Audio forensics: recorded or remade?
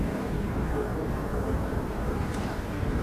remade